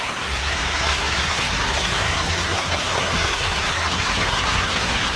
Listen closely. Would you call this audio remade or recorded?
remade